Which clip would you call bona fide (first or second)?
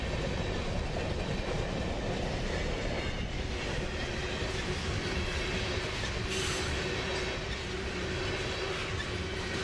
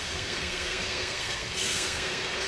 first